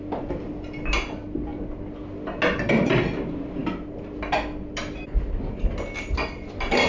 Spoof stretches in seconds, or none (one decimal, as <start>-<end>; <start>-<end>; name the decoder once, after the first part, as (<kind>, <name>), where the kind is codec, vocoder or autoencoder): none

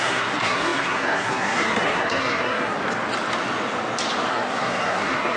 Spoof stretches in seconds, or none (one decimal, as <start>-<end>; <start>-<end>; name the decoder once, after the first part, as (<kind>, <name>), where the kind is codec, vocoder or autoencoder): 0.0-2.8 (codec, SNAC); 4.3-5.4

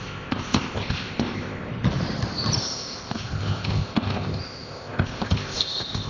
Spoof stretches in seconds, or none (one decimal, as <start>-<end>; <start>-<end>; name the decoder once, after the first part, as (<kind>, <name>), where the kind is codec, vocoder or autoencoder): 0.0-1.7 (codec, ZipCodec); 2.6-6.1

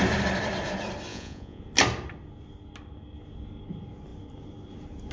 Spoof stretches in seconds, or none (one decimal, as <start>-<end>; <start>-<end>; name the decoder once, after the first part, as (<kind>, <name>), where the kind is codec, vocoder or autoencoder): 1.1-1.6 (vocoder, Vocos)